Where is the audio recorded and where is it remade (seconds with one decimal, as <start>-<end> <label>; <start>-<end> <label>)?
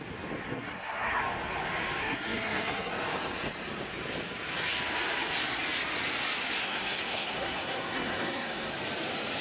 0.0-0.5 recorded; 0.5-1.2 remade; 1.2-2.0 recorded; 2.0-2.9 remade; 2.9-6.6 recorded; 6.6-8.7 remade; 8.7-9.4 recorded